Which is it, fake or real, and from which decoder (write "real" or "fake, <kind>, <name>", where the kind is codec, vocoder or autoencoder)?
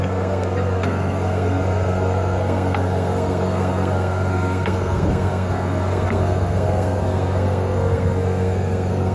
fake, codec, SNAC